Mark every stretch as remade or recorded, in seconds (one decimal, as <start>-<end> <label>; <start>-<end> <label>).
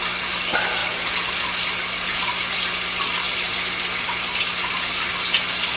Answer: 0.0-5.8 recorded